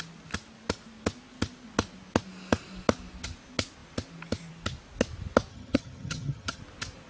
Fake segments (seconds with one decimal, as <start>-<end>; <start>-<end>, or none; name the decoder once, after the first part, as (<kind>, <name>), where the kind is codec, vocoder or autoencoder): 5.5-6.6 (vocoder, HiFi-GAN)